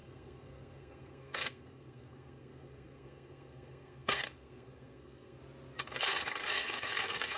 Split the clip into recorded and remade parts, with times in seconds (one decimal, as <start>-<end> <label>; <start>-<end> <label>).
0.0-5.4 remade; 5.4-6.0 recorded; 6.0-7.4 remade